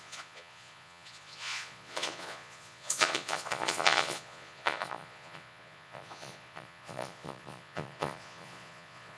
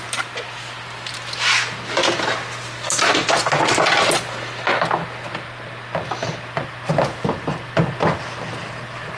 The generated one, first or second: first